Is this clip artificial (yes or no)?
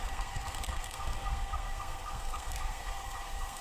yes